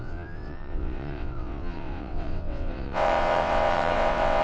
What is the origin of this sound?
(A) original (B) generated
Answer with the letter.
B